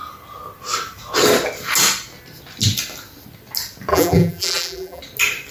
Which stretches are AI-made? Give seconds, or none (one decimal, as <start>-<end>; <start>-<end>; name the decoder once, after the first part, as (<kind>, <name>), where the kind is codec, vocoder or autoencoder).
3.9-5.0 (vocoder, BigVGAN v2)